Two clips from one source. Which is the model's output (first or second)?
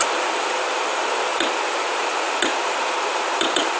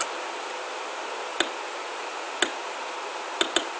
first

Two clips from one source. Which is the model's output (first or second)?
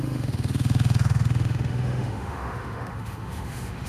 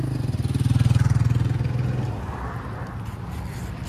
first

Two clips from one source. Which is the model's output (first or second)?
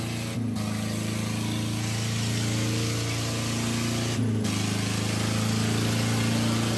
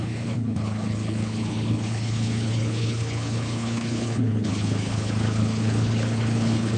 second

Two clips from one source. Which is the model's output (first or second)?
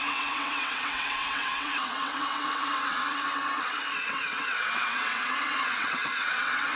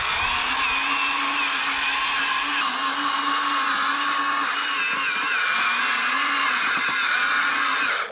first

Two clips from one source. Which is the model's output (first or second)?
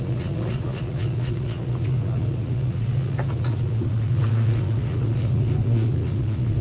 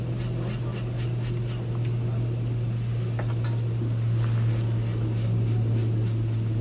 first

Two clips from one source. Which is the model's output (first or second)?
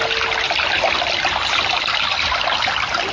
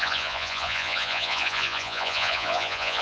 second